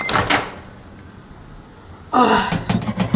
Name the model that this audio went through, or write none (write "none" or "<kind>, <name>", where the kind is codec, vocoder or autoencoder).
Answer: none